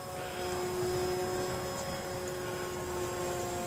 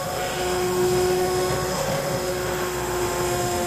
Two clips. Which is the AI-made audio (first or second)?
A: second